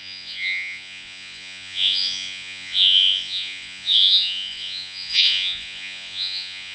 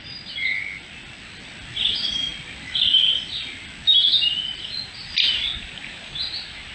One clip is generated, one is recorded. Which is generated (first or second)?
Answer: first